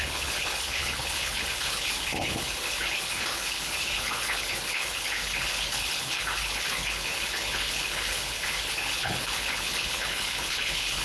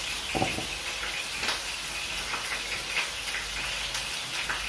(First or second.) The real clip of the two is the second